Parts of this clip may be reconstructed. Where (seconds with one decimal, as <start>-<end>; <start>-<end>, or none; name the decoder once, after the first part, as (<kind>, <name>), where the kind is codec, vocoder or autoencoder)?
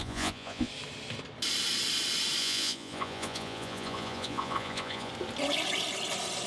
0.0-0.7 (vocoder, Vocos); 2.4-5.1